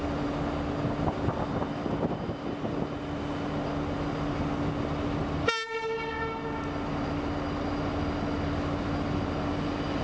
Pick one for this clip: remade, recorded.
recorded